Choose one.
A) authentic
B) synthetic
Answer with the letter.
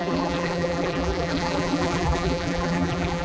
B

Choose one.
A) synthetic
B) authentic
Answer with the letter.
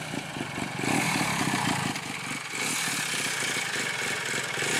B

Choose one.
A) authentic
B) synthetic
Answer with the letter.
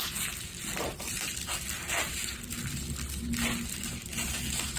A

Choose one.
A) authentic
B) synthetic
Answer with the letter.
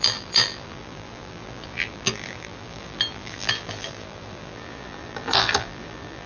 B